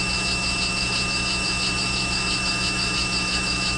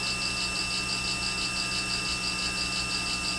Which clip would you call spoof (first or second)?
first